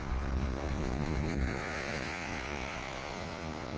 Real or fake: fake